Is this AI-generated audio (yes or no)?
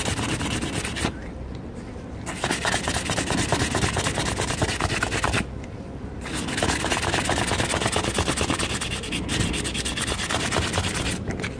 no